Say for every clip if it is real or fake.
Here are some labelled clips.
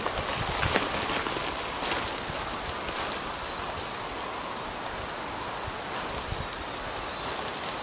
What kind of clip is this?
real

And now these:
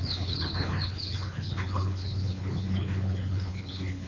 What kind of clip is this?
fake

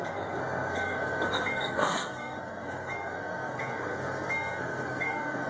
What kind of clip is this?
fake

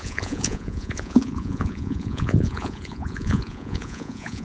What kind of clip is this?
fake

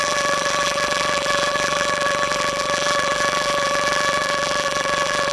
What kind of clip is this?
fake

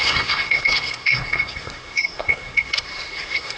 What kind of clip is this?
fake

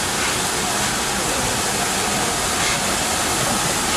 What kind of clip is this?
real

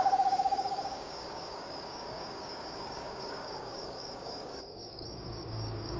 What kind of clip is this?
fake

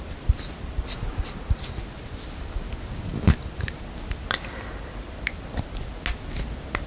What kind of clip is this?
real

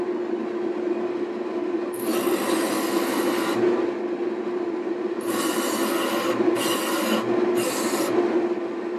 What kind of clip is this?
real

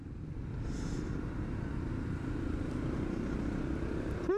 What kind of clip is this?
fake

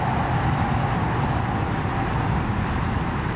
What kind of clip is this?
real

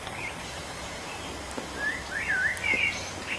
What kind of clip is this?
real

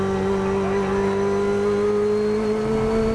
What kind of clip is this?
real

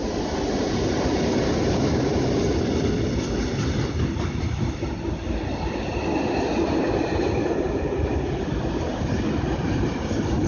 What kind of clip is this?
fake